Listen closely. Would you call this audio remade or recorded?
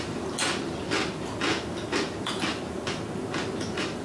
recorded